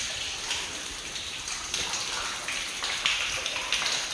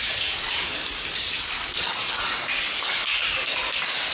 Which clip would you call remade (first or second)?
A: second